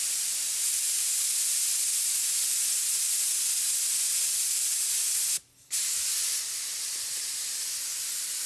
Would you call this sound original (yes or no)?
yes